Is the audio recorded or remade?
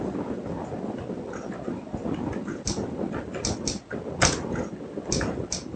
recorded